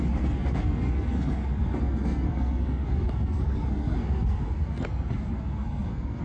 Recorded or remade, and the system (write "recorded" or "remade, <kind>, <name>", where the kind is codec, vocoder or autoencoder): remade, codec, SNAC